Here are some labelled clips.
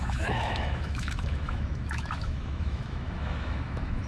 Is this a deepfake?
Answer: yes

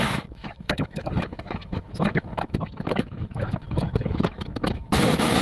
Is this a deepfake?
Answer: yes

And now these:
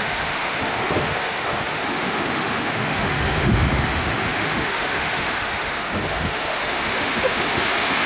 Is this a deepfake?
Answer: yes